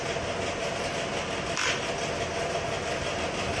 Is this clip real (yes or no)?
yes